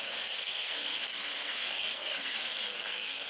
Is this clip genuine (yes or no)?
no